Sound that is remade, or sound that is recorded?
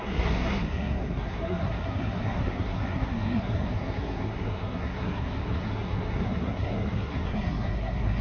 remade